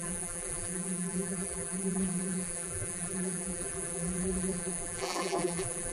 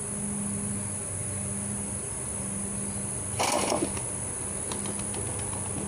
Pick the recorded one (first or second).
second